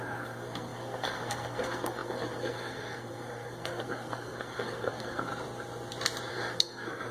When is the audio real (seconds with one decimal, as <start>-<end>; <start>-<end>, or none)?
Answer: 5.3-6.3